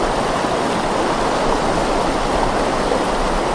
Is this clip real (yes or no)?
yes